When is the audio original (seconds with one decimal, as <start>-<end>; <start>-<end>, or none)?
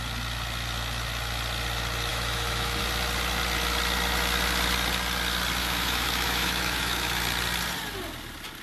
0.0-2.1; 2.8-5.6; 7.2-8.6